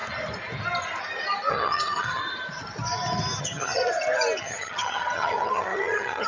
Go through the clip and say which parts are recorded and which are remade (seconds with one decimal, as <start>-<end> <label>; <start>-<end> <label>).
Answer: 0.0-1.5 recorded; 1.5-2.2 remade; 2.2-3.4 recorded; 3.4-3.8 remade; 3.8-4.4 recorded; 4.4-6.3 remade